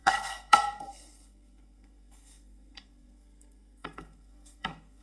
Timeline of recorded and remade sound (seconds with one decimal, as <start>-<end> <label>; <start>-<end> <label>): 0.0-5.0 remade